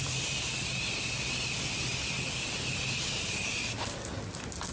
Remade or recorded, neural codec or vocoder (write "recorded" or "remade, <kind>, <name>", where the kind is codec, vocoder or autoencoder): recorded